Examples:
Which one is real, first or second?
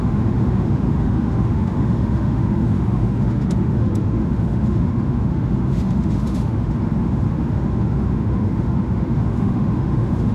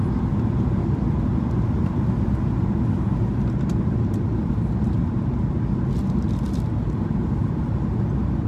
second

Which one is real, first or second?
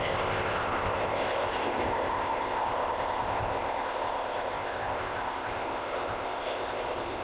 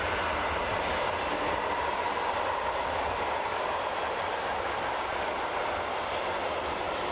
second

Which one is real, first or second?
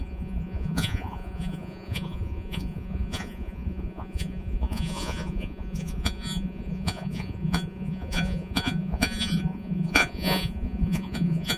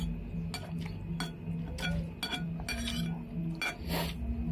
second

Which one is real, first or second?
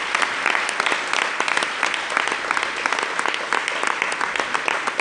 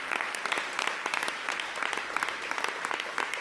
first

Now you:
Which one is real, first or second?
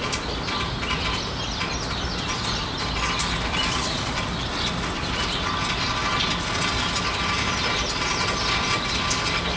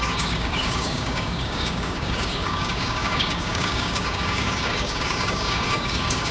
first